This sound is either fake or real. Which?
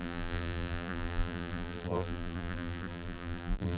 fake